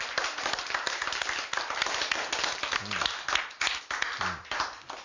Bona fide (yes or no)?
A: yes